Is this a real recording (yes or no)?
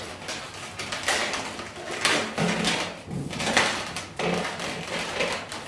yes